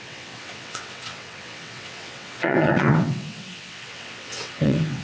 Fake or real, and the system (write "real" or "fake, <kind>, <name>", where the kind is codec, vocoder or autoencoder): fake, vocoder, WaveNeXt